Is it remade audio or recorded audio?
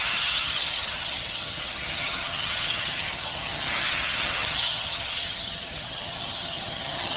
remade